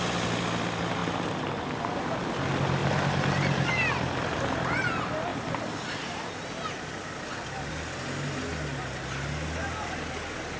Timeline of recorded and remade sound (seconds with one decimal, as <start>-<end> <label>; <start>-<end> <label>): 0.0-10.6 recorded